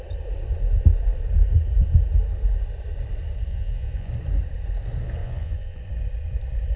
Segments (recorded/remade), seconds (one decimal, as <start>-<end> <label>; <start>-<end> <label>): 0.0-3.5 recorded; 3.5-4.1 remade; 4.1-5.2 recorded; 5.2-5.8 remade; 5.8-6.8 recorded